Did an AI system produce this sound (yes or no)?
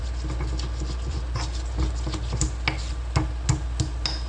no